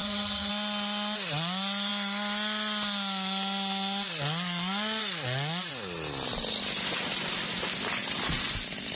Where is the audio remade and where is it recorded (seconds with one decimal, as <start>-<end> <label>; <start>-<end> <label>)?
0.0-0.5 remade; 0.5-9.0 recorded